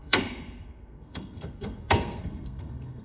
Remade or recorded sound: remade